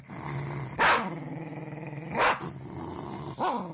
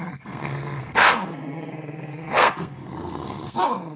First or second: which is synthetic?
second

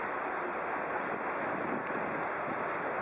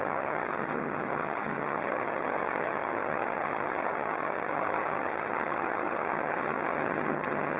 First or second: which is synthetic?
second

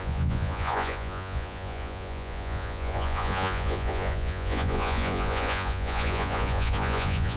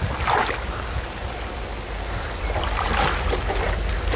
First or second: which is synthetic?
first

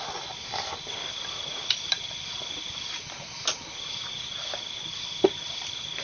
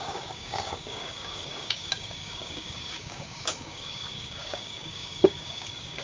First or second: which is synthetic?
second